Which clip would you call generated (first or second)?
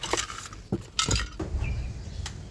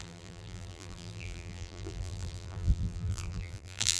second